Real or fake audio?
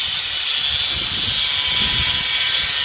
real